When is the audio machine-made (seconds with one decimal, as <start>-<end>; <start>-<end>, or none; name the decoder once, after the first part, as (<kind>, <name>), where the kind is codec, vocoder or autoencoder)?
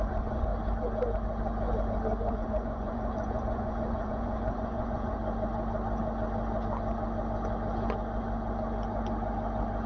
0.0-0.5 (vocoder, Vocos); 2.3-5.2